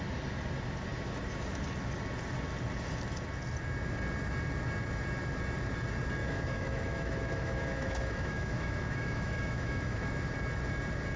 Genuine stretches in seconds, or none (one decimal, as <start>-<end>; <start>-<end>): 0.0-6.2; 10.2-11.2